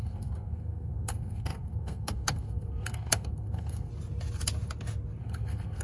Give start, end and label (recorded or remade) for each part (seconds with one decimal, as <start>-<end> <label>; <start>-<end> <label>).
0.0-3.9 remade; 3.9-5.2 recorded; 5.2-5.8 remade